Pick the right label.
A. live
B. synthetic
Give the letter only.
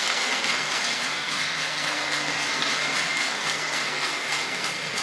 B